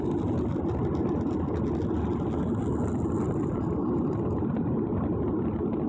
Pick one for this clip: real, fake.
real